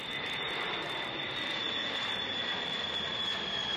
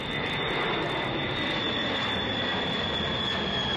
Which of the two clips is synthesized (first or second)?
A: first